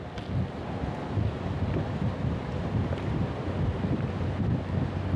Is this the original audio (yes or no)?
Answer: yes